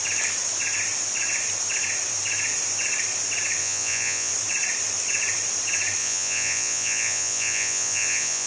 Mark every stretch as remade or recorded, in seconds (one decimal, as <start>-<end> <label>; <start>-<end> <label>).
0.0-3.6 recorded; 3.6-4.3 remade; 4.3-6.0 recorded; 6.0-8.5 remade